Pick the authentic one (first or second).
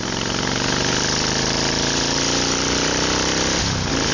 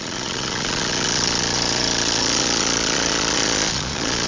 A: first